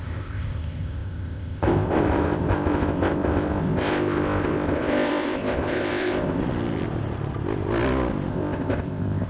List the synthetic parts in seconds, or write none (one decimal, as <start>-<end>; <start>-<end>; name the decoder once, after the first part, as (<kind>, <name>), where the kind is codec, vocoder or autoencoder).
0.0-6.4 (codec, ZipCodec); 8.3-9.3